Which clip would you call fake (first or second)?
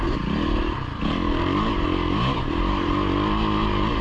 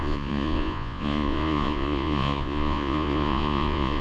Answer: second